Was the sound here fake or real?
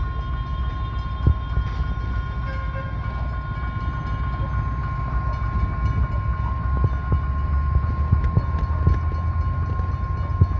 real